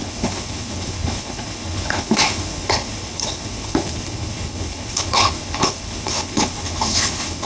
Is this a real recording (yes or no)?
no